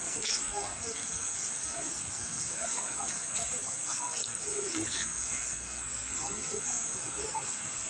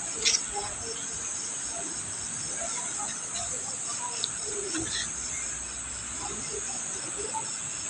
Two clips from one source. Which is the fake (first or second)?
first